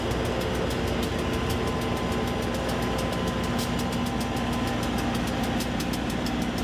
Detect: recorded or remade recorded